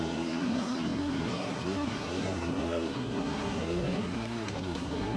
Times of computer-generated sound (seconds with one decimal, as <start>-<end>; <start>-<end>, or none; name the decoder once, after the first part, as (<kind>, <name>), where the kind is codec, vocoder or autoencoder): 0.0-5.2 (codec, SNAC)